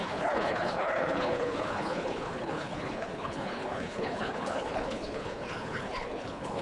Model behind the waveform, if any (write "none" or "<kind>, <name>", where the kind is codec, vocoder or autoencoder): codec, HILCodec